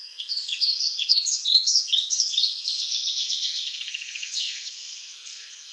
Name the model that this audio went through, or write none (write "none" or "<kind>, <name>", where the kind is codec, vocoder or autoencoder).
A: codec, SNAC